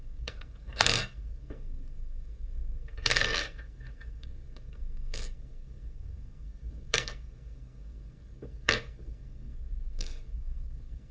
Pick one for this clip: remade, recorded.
remade